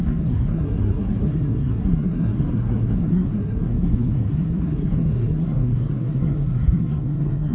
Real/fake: fake